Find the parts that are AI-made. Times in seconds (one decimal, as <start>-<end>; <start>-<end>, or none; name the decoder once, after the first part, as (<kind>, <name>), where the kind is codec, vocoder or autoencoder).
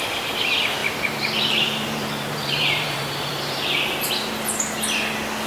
0.8-4.1 (vocoder, BigVGAN v2)